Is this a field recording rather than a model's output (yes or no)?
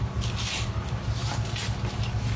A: yes